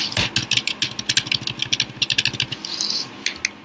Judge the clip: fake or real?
real